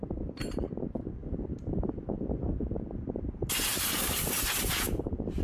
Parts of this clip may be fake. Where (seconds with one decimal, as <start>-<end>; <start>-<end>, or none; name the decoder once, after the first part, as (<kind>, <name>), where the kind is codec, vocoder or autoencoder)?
1.2-2.7 (vocoder, BigVGAN v2)